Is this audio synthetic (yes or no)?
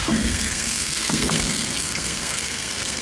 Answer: yes